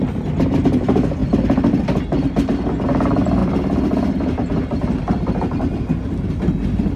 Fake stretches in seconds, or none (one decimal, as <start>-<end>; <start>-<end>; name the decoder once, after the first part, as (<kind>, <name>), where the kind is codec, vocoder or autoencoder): none